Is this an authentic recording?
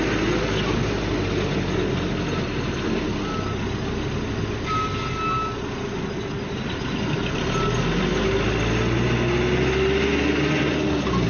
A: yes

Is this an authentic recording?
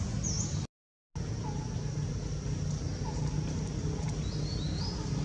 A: yes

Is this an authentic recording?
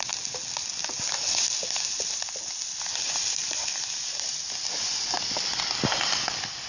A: yes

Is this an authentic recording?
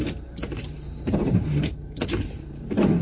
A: no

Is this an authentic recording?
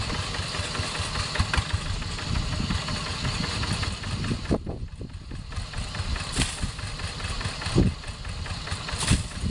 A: yes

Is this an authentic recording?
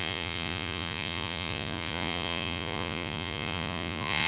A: no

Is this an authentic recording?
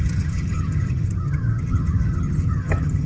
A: no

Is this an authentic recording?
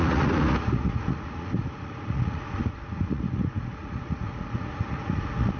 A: no